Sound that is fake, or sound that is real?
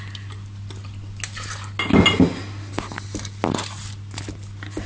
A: real